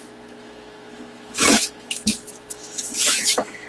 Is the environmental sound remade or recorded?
remade